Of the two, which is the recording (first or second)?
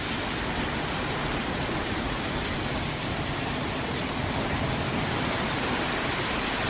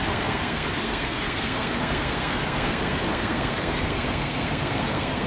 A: first